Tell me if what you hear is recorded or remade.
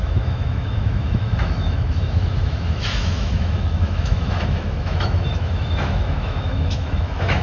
remade